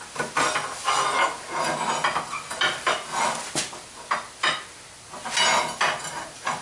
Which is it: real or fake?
real